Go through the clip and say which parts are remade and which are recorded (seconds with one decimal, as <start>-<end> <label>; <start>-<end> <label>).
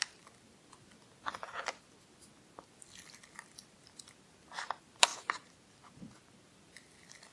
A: 0.0-7.3 recorded